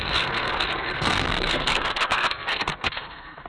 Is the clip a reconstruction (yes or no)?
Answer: yes